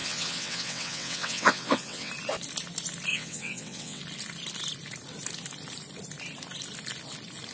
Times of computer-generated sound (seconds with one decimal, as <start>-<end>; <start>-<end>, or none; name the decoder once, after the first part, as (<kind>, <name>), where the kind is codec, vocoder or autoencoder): 0.0-2.1 (vocoder, WaveNeXt); 3.1-4.0